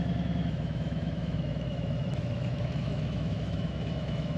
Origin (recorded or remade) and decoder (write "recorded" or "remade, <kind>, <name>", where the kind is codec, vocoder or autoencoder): remade, autoencoder, DAC-VAE